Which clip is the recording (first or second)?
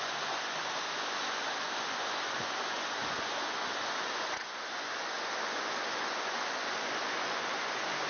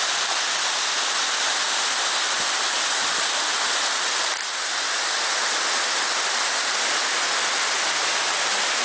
second